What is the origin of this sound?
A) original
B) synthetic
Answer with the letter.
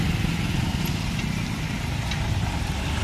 A